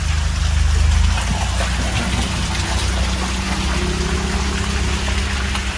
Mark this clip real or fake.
real